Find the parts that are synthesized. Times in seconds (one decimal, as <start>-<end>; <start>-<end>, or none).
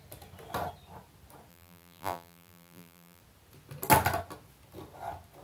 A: 1.5-3.2